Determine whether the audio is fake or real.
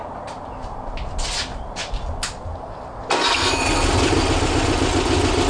real